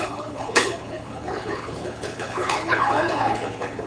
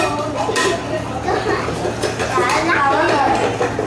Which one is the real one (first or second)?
second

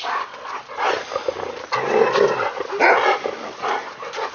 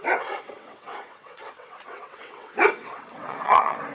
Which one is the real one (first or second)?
first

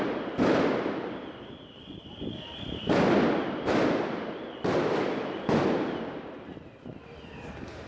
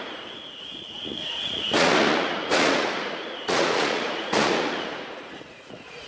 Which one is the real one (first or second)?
first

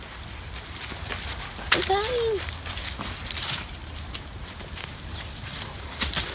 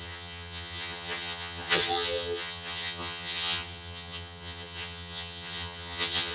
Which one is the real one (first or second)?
first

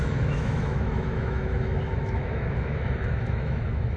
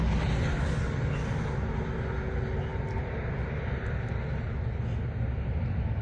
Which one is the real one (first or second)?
second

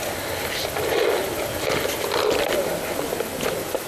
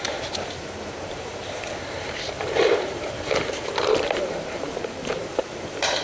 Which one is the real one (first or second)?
first